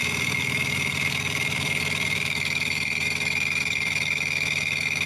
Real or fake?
fake